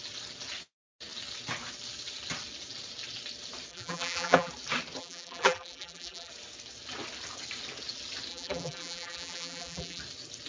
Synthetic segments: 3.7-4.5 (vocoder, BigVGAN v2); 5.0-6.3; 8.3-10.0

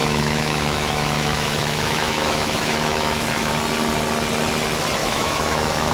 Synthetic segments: 0.0-3.5 (autoencoder, DAC-VAE); 5.0-5.9

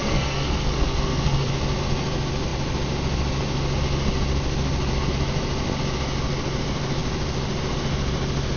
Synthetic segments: 0.0-1.5 (codec, SNAC)

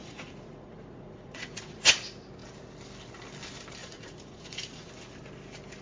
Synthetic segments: 0.0-1.9 (vocoder, Vocos); 3.8-4.9

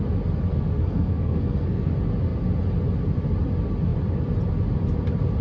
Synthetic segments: 0.5-1.9 (codec, SNAC)